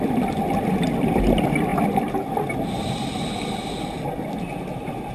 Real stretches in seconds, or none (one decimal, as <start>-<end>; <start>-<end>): 0.0-5.1